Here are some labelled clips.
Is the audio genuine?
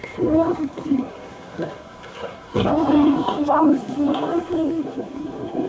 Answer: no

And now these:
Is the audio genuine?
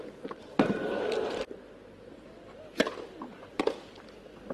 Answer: yes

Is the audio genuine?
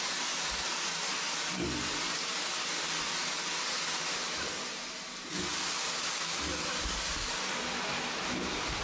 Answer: yes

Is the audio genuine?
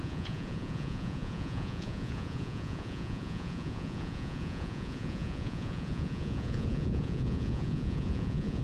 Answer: no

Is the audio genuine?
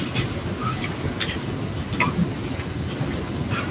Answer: yes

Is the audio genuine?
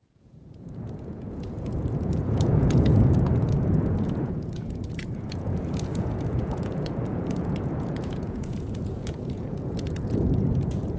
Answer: no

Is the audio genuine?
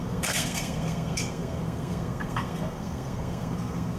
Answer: no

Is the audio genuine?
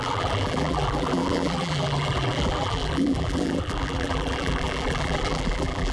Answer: no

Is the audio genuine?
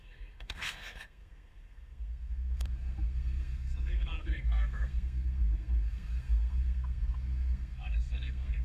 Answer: no